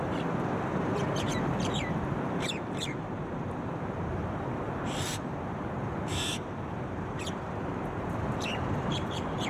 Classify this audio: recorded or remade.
remade